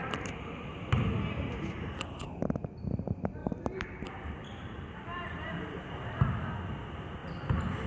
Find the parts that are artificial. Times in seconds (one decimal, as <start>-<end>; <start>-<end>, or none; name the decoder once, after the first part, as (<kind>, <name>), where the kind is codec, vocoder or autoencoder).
0.0-0.7 (vocoder, BigVGAN v2); 3.4-5.7